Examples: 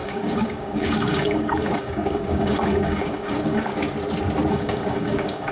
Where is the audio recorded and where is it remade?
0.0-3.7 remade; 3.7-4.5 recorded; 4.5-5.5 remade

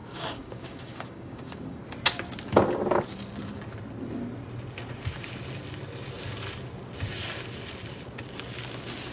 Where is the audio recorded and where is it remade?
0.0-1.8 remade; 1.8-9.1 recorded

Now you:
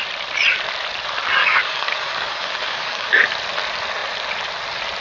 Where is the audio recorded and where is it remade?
0.0-1.4 recorded; 1.4-3.3 remade; 3.3-5.0 recorded

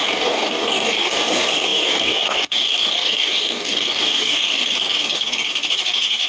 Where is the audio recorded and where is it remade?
0.0-6.3 remade

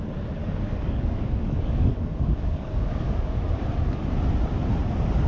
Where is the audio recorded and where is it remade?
0.0-0.4 recorded; 0.4-3.6 remade; 3.6-5.3 recorded

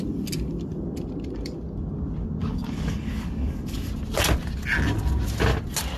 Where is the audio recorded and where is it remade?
0.0-2.4 recorded; 2.4-3.9 remade; 3.9-6.0 recorded